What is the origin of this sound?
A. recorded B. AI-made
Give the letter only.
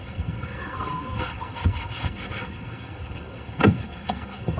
B